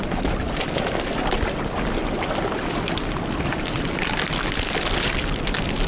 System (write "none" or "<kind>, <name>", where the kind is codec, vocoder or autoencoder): none